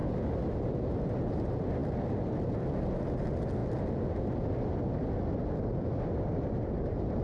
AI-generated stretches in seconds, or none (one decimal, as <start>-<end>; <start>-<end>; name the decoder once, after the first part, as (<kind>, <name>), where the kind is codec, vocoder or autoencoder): none